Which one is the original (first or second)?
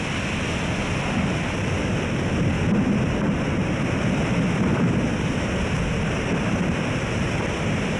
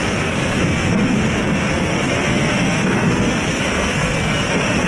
first